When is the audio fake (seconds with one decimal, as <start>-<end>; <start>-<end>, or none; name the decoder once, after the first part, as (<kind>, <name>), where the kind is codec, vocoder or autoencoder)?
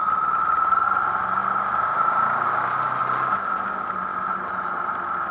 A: none